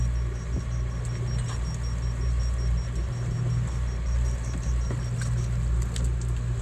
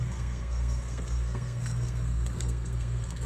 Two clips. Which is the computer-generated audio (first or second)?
second